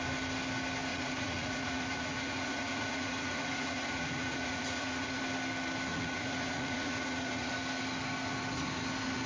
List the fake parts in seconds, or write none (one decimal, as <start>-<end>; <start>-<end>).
0.9-5.2; 5.9-7.5